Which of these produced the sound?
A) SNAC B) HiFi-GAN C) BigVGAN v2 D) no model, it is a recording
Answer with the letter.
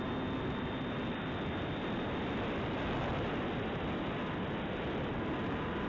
D